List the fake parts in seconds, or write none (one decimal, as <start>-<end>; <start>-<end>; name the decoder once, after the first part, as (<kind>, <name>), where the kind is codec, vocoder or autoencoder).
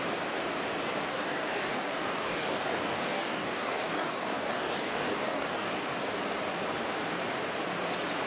1.1-5.7 (codec, DAC)